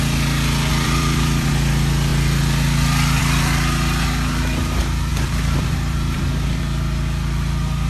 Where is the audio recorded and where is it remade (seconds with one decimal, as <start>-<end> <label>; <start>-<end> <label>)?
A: 0.0-0.7 recorded; 0.7-1.5 remade; 1.5-5.1 recorded; 5.1-6.6 remade; 6.6-7.9 recorded